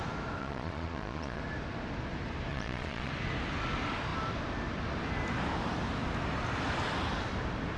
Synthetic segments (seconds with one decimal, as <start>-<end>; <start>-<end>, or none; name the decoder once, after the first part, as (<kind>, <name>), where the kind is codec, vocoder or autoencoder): 0.4-1.4 (vocoder, Vocos); 2.5-3.1